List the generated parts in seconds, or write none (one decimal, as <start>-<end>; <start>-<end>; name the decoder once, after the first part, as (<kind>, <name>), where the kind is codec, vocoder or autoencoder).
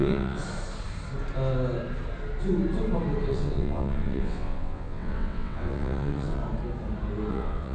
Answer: 0.0-0.4 (vocoder, WaveNeXt); 3.3-6.4; 7.3-7.7